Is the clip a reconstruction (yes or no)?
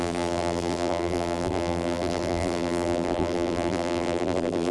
yes